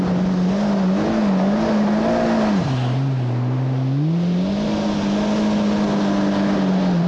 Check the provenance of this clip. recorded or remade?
recorded